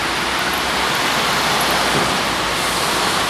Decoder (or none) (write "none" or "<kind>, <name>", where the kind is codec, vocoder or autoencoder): none